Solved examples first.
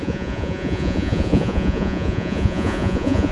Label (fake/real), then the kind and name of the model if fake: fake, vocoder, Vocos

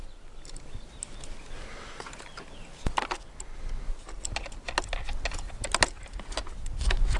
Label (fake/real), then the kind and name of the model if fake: real